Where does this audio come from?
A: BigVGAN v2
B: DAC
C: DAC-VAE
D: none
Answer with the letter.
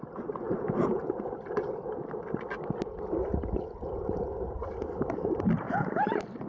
D